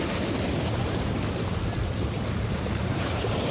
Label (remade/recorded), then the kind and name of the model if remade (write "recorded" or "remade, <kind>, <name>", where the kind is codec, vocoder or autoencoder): recorded